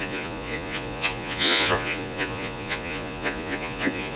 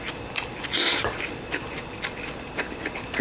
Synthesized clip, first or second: first